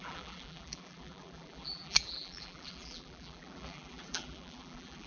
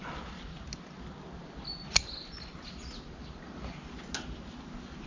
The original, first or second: second